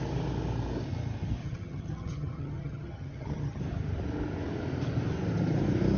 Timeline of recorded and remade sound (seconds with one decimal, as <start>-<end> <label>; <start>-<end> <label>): 0.0-1.4 recorded; 1.4-3.6 remade; 3.6-6.0 recorded